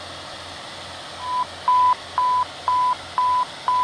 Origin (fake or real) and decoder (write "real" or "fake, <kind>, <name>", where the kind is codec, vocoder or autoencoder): real